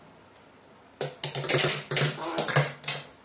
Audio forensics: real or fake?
real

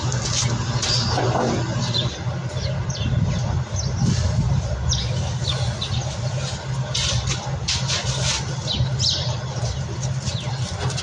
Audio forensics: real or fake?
real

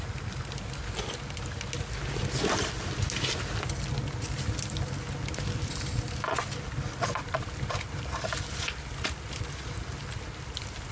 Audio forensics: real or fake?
real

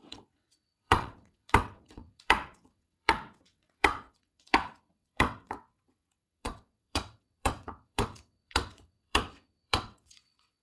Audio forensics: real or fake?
fake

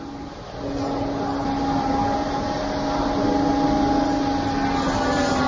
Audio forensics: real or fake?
real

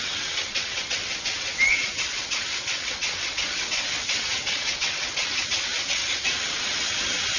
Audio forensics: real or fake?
fake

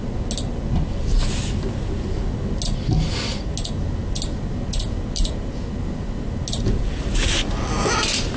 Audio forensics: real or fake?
real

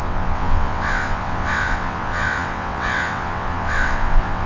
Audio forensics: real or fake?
fake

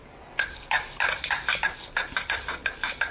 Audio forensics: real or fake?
real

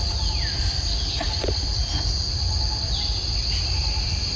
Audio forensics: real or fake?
real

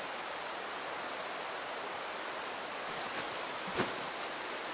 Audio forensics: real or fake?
real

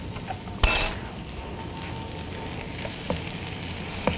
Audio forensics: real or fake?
real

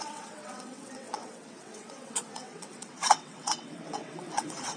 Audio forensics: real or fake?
fake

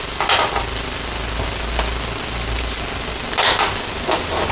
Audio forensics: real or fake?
real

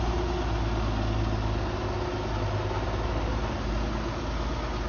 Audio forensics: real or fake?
real